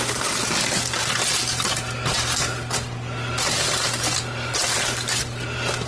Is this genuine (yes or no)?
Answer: yes